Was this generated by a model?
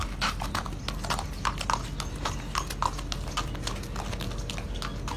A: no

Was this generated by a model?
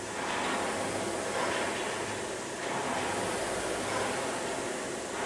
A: no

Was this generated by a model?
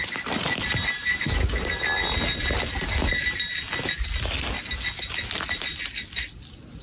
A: no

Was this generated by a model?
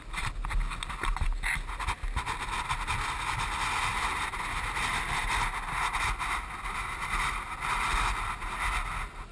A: no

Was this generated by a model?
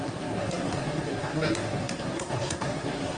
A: yes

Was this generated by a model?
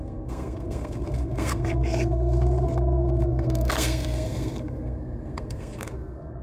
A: yes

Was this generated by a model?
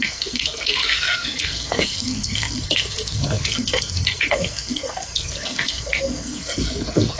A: yes